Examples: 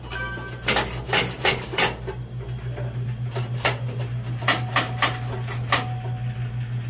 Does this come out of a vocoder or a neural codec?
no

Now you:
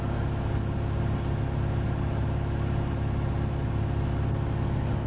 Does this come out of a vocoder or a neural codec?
no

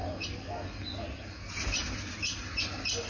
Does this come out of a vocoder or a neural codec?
no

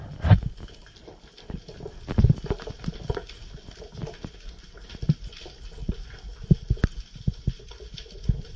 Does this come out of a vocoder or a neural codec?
no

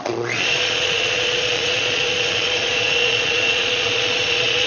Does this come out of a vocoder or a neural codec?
yes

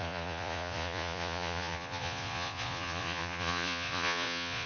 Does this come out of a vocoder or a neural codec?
yes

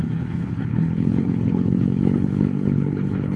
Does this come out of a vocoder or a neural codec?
yes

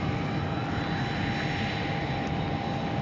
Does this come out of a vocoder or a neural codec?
no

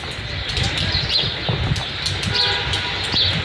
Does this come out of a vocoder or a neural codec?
no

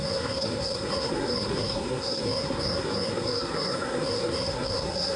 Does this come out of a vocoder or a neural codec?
yes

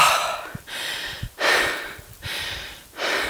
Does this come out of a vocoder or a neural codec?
yes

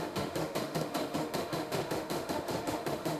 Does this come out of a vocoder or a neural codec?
yes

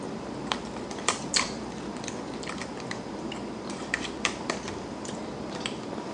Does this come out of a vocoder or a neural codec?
yes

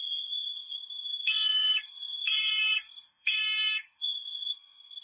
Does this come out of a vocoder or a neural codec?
yes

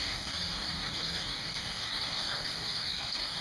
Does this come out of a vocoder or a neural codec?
yes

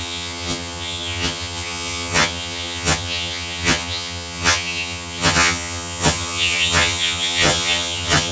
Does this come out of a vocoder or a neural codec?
yes